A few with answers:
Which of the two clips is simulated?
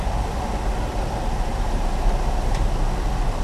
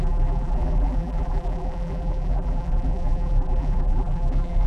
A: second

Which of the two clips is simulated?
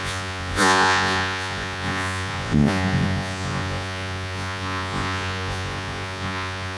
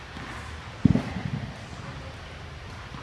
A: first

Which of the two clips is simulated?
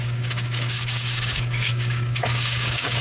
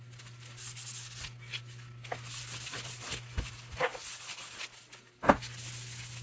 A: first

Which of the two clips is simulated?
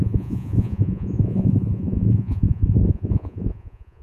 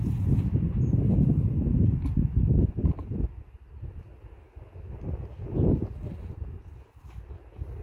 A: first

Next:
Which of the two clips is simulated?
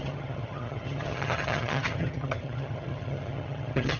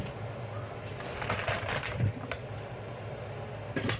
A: first